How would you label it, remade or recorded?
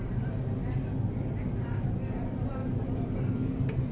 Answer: recorded